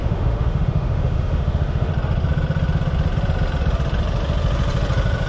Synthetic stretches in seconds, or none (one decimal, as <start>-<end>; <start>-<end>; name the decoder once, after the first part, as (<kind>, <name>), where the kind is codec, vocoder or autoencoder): 0.0-1.9 (autoencoder, DAC-VAE)